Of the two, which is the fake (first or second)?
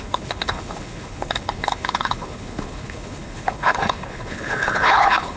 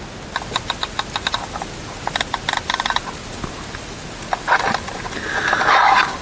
first